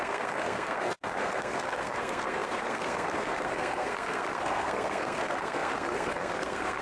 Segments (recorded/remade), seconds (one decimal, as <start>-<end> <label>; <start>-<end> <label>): 0.0-6.8 remade